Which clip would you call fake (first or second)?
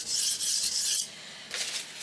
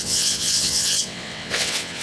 second